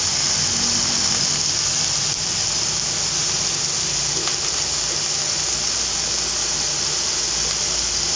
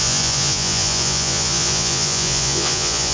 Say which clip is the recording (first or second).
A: first